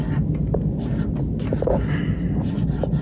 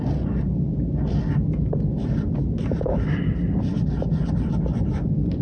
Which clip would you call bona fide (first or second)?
first